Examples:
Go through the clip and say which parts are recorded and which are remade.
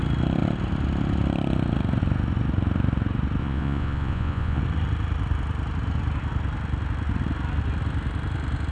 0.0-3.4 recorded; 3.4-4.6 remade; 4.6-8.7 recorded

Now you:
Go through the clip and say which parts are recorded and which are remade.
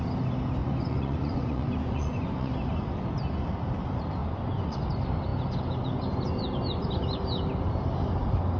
0.0-0.6 recorded; 0.6-2.5 remade; 2.5-4.2 recorded; 4.2-4.8 remade; 4.8-8.6 recorded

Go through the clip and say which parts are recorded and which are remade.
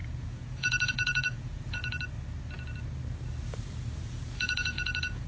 0.0-1.8 remade; 1.8-4.0 recorded; 4.0-5.3 remade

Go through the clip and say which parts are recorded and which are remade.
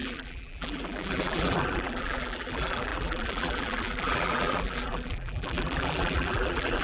0.0-6.8 remade